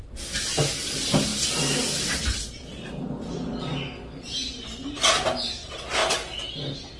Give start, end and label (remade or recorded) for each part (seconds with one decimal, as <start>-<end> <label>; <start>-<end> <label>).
0.0-7.0 recorded